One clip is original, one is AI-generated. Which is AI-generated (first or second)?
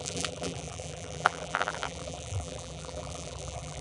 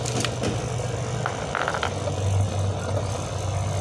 first